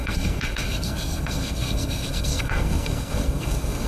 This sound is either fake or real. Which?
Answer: fake